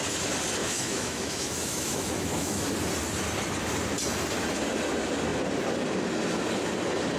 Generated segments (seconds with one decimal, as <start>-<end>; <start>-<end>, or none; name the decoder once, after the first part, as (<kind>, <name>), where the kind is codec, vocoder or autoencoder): 0.6-2.7 (autoencoder, DAC-VAE)